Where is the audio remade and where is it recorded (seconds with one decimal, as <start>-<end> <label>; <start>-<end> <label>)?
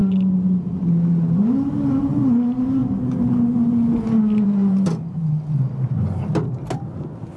0.0-7.4 recorded